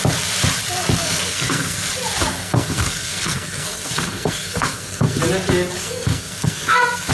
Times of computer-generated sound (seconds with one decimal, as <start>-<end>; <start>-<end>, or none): 1.0-1.9; 2.3-5.2; 5.8-7.1